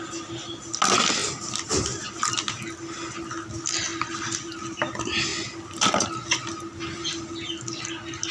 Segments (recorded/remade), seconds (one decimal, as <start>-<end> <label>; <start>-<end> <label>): 0.0-3.9 recorded; 3.9-4.7 remade; 4.7-8.3 recorded